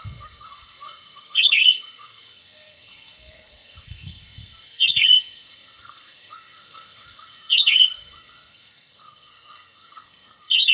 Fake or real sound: fake